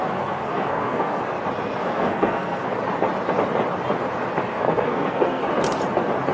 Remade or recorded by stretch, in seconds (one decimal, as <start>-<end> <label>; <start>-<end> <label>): 0.0-1.2 remade; 1.2-1.8 recorded; 1.8-2.7 remade; 2.7-4.5 recorded; 4.5-5.5 remade; 5.5-6.3 recorded

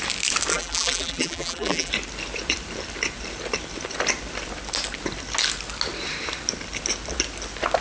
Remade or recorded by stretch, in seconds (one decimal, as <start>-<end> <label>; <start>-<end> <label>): 0.0-0.5 recorded; 0.5-1.9 remade; 1.9-7.8 recorded

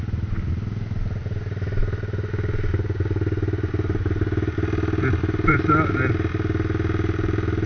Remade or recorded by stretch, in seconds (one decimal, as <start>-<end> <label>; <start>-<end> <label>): 0.0-7.7 recorded

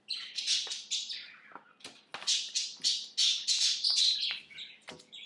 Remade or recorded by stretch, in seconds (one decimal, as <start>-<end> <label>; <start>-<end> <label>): 0.0-5.3 recorded

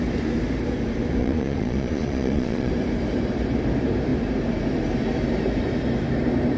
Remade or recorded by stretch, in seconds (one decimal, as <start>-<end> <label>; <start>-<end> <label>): 0.0-1.2 recorded; 1.2-2.7 remade; 2.7-6.6 recorded

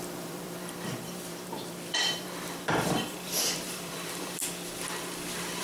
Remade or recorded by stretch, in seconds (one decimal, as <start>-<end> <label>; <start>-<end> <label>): 0.0-4.4 remade; 4.4-5.6 recorded

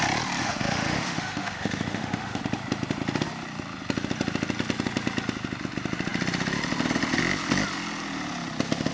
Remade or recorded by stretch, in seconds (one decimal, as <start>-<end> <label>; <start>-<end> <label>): 0.0-0.4 recorded; 0.4-2.4 remade; 2.4-8.9 recorded